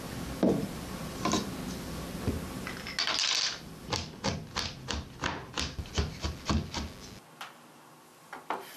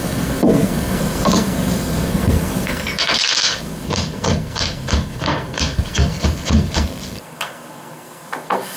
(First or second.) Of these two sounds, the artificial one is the second